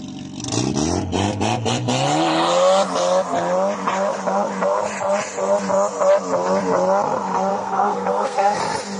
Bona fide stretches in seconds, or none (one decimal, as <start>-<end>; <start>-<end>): 0.0-7.5; 8.6-9.0